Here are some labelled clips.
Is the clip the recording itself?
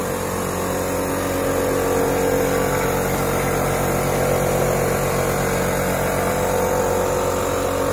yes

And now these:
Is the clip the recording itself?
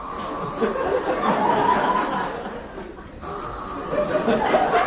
yes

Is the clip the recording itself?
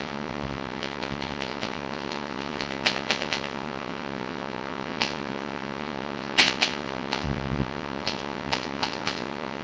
no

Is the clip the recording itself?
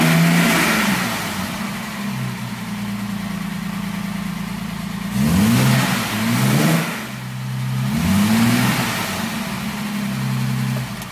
yes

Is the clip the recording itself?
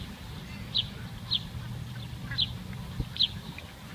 yes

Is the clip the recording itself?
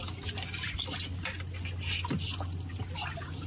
yes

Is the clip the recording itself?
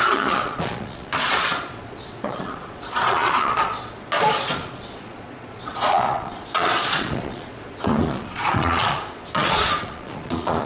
no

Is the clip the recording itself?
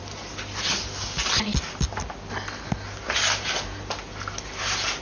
yes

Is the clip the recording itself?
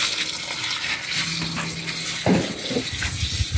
yes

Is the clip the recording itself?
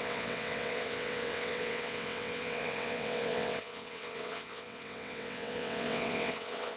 no